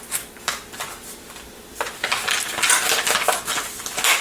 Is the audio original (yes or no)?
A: yes